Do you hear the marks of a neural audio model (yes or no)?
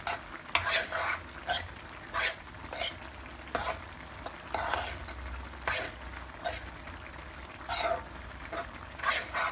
no